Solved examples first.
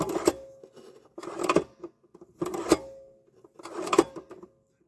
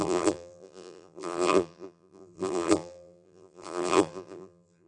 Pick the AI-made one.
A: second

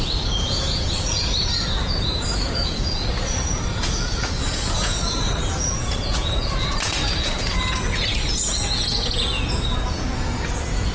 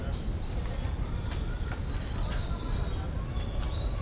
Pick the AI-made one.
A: first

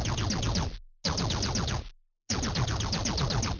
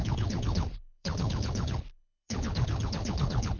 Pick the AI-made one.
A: second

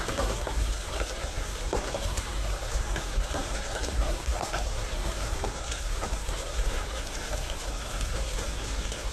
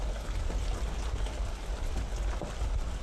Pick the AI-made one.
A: first